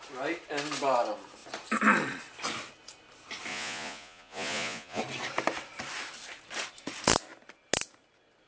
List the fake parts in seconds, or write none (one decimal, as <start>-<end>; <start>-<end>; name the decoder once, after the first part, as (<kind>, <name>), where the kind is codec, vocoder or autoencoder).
3.5-5.0 (vocoder, Vocos)